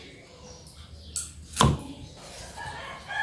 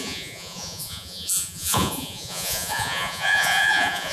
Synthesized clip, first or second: second